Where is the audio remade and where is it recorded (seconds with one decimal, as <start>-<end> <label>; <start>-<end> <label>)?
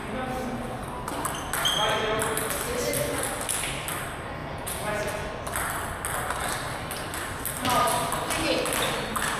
0.0-4.4 recorded; 4.4-5.0 remade; 5.0-9.4 recorded